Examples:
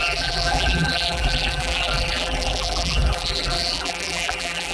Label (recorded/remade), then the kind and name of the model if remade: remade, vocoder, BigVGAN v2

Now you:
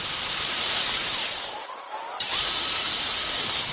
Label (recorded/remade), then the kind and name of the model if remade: remade, vocoder, BigVGAN v2